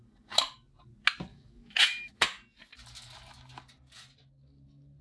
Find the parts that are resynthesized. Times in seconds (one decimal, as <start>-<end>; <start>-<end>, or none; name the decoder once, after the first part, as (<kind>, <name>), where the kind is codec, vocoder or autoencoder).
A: 1.3-2.1 (autoencoder, DAC-VAE)